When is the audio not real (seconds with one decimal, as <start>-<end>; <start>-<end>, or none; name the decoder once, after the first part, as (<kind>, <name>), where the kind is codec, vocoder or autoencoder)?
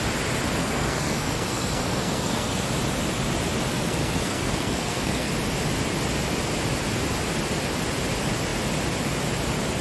0.6-2.7 (codec, SNAC); 3.7-5.3